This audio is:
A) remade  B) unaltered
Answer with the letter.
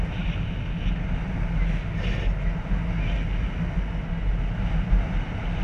B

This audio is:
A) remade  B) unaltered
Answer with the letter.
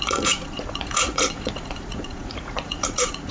A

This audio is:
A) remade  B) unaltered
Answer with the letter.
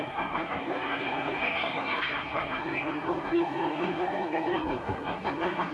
A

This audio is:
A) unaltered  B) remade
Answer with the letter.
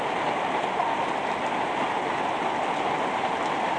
A